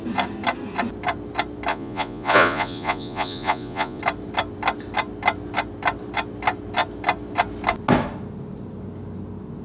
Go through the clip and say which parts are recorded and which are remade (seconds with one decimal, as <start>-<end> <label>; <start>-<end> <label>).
0.0-1.7 recorded; 1.7-4.0 remade; 4.0-9.6 recorded